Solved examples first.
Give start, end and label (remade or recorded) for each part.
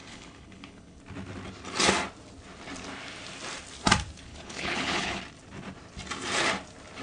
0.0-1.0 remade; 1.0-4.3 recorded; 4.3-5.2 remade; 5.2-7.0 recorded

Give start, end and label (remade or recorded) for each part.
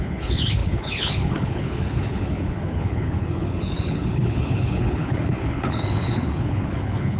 0.0-7.2 remade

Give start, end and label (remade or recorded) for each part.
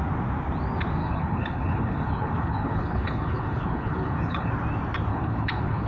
0.0-1.0 recorded; 1.0-4.5 remade; 4.5-5.1 recorded; 5.1-5.9 remade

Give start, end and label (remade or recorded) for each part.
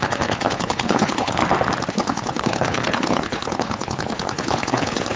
0.0-1.4 remade; 1.4-1.9 recorded; 1.9-5.2 remade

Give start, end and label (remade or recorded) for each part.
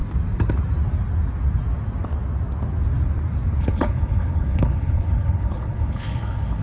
0.0-3.6 recorded; 3.6-6.6 remade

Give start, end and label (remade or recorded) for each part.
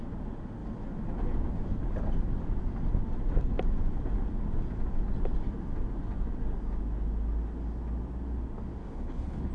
0.0-8.8 recorded; 8.8-9.5 remade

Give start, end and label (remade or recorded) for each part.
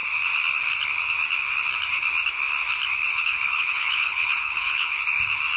0.0-3.1 recorded; 3.1-5.0 remade; 5.0-5.6 recorded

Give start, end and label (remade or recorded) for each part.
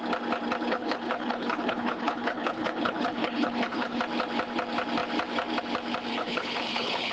0.0-0.7 recorded; 0.7-4.0 remade; 4.0-6.1 recorded; 6.1-7.1 remade